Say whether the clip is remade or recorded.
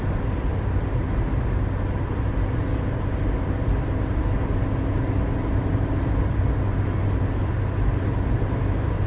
recorded